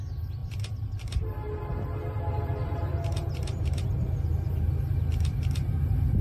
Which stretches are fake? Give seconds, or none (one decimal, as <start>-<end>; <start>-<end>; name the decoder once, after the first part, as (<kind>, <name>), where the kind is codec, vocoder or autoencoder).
0.4-4.1 (vocoder, BigVGAN v2)